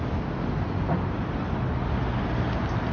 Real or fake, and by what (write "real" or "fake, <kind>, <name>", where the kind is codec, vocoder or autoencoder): real